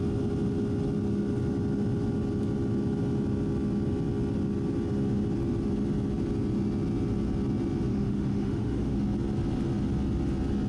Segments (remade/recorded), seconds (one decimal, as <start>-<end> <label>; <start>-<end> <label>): 0.0-7.9 recorded; 7.9-9.0 remade; 9.0-10.7 recorded

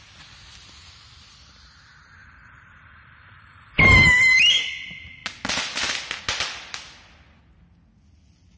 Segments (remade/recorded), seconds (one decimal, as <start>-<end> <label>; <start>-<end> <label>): 0.0-2.2 recorded; 2.2-4.1 remade; 4.1-8.6 recorded